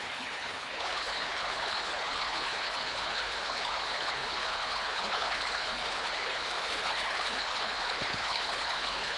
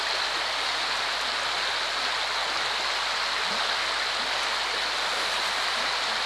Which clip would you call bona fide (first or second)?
second